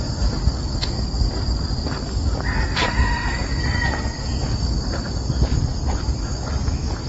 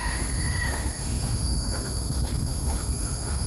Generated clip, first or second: second